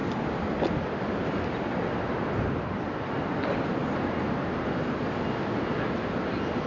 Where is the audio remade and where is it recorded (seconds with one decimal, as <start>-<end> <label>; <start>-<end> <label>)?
0.0-6.7 recorded